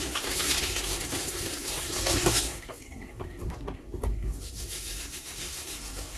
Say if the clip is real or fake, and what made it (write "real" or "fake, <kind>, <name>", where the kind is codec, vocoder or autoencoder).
fake, codec, SNAC